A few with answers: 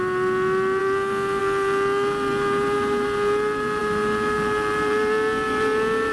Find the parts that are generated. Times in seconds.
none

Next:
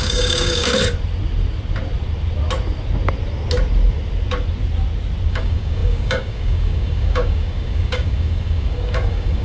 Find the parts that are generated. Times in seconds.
0.0-0.7 (codec, DAC); 5.3-9.4

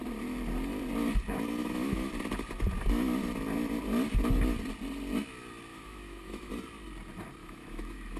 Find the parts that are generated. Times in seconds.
1.6-2.1 (autoencoder, DAC-VAE); 5.7-6.5; 7.4-8.2

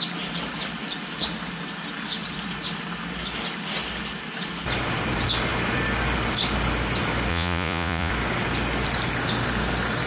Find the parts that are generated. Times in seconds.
7.3-8.1 (vocoder, Vocos)

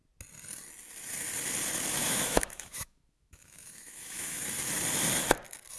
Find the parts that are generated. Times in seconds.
2.0-4.4 (autoencoder, DAC-VAE)